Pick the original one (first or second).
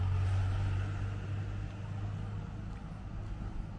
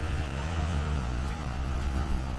first